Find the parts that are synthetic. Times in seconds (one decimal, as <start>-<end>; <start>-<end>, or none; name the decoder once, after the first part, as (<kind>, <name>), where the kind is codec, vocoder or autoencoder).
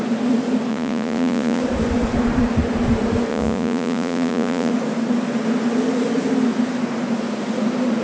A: 0.7-1.6 (vocoder, Vocos); 3.3-4.7